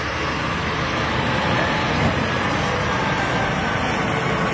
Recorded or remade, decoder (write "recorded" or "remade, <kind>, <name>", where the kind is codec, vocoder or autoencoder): remade, vocoder, BigVGAN v2